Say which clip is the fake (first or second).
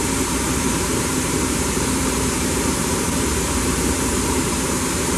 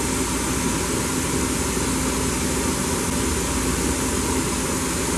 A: first